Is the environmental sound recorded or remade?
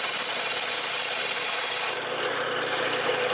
recorded